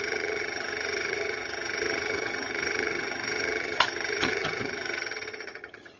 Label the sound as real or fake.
fake